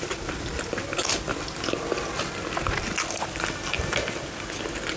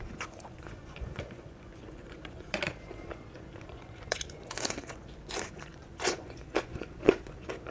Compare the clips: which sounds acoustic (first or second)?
first